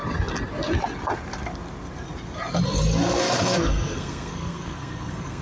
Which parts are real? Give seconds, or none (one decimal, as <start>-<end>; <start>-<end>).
0.0-3.2